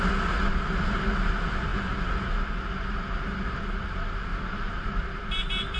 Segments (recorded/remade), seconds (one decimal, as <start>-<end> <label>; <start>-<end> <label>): 0.0-4.3 recorded; 4.3-5.8 remade